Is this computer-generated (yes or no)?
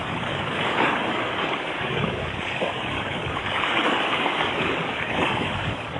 yes